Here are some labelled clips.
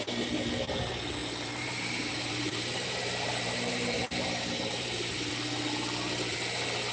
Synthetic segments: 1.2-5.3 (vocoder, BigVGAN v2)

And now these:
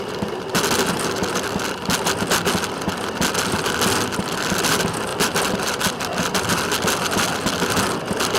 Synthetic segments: 5.1-7.3 (vocoder, BigVGAN v2)